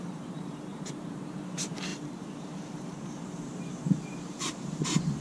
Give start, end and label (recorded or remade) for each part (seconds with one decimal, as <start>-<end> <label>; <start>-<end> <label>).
0.0-5.2 remade